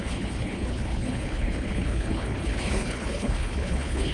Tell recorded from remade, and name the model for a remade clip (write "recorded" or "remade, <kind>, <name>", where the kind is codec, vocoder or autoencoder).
remade, codec, HILCodec